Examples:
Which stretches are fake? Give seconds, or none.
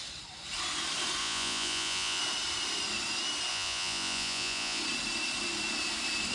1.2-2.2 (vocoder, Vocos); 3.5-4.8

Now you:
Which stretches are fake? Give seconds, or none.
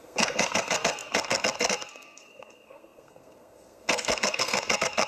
0.0-5.1 (codec, SNAC)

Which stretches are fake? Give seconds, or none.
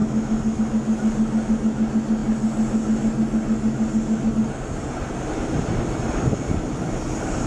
0.0-0.6 (autoencoder, DAC-VAE)